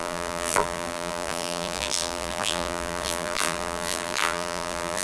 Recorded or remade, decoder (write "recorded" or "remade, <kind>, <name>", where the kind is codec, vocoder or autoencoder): remade, vocoder, BigVGAN v2